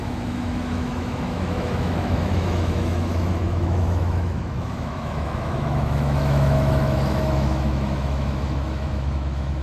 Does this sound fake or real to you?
fake